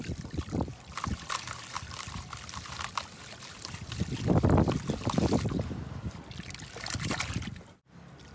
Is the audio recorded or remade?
recorded